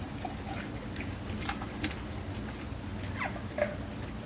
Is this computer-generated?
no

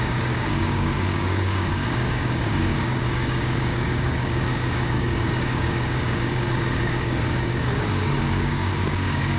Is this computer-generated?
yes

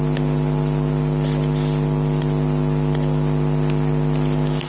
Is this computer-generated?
no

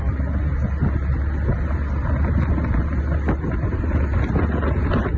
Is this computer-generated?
no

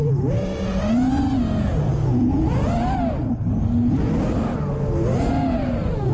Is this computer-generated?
no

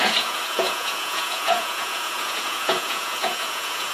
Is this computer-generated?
yes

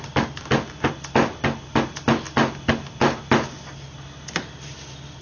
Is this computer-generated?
no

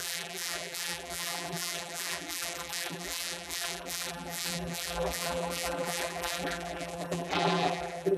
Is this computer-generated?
yes